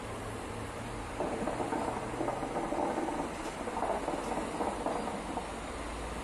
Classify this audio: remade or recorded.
recorded